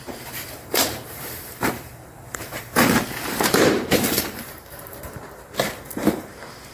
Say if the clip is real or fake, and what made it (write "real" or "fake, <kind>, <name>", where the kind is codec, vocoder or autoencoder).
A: fake, vocoder, BigVGAN v2